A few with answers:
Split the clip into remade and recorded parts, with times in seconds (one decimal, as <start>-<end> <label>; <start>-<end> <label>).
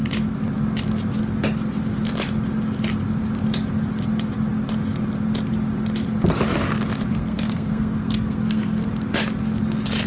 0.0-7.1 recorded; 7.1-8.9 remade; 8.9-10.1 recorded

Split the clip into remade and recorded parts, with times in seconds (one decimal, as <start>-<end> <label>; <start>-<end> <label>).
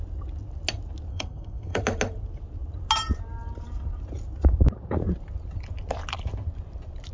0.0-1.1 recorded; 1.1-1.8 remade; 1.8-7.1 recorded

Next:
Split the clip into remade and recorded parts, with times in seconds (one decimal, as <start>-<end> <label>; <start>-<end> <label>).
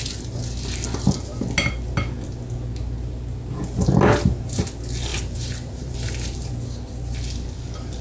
0.0-5.1 recorded; 5.1-6.5 remade; 6.5-8.0 recorded